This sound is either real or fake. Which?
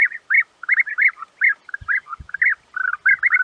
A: real